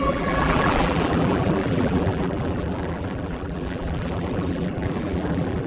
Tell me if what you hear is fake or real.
fake